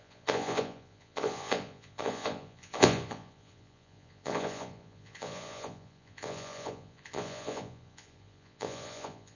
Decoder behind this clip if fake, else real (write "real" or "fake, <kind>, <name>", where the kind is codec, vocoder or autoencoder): fake, vocoder, Vocos